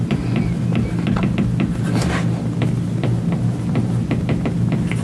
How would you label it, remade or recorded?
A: recorded